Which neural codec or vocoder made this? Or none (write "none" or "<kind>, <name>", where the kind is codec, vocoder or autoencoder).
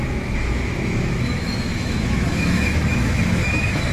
autoencoder, DAC-VAE